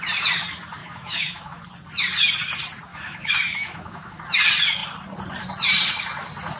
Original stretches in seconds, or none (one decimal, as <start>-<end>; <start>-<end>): 0.0-0.8; 1.6-2.9; 4.2-6.6